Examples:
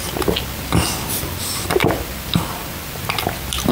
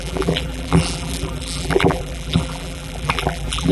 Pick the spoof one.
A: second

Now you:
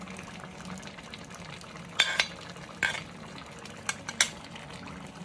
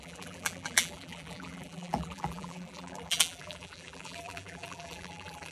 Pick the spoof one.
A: second